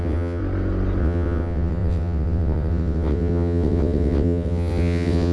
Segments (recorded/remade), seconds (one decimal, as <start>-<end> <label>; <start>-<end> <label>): 0.0-0.4 remade; 0.4-1.0 recorded; 1.0-5.3 remade